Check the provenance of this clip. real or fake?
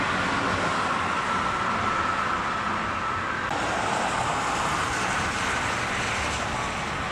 real